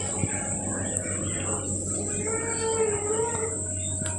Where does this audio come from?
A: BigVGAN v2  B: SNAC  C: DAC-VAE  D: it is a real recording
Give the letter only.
D